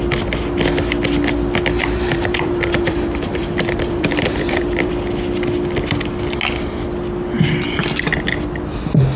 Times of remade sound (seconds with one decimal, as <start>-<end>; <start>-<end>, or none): 1.8-4.9

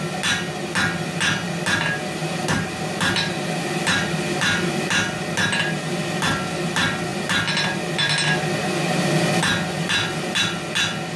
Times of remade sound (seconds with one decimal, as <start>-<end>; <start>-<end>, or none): 2.2-4.8

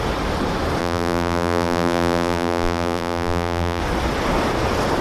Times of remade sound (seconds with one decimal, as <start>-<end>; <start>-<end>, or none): 0.8-3.8

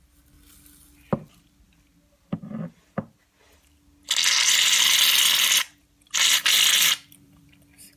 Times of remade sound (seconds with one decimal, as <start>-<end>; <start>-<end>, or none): 4.2-7.5

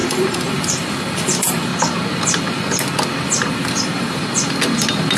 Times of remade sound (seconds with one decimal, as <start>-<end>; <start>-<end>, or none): 0.0-1.7; 3.5-4.2